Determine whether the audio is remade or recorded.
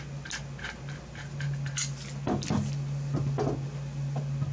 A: recorded